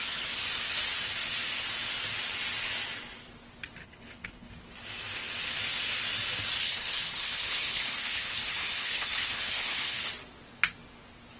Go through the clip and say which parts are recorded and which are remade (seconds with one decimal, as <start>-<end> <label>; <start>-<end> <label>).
0.0-3.8 recorded; 3.8-4.5 remade; 4.5-6.6 recorded; 6.6-10.1 remade; 10.1-11.4 recorded